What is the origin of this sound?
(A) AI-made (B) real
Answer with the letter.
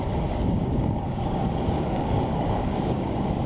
A